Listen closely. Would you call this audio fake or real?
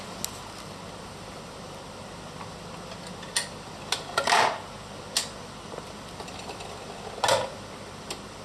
real